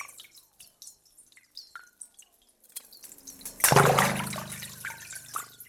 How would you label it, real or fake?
real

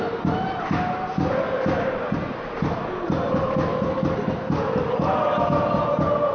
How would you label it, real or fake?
real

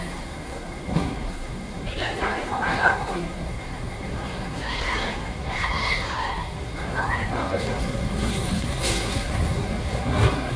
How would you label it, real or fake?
fake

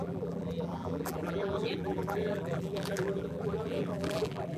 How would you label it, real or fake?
fake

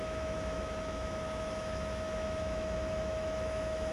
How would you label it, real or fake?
fake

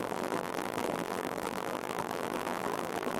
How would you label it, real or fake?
fake